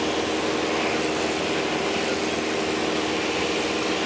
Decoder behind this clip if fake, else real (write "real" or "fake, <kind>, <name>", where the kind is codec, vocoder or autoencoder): real